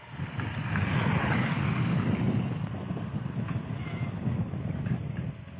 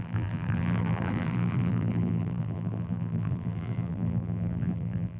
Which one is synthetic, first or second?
second